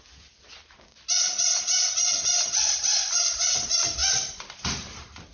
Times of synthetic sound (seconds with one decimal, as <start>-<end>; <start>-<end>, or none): none